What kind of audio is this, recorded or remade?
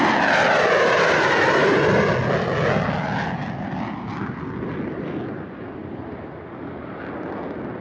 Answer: recorded